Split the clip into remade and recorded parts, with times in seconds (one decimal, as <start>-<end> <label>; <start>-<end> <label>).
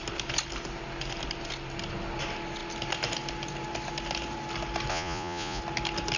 0.0-4.9 recorded; 4.9-5.6 remade; 5.6-6.2 recorded